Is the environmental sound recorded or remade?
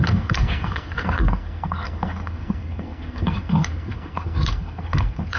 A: remade